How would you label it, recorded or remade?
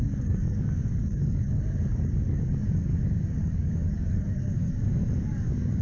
remade